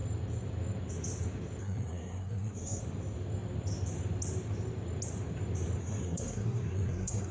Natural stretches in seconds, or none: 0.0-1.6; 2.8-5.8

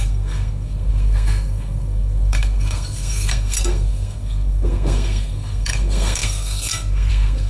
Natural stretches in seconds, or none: none

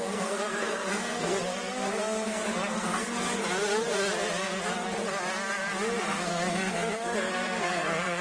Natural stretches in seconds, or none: 3.4-6.0

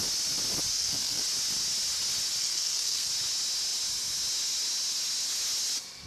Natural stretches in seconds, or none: 0.0-0.7; 1.2-2.4; 3.1-6.1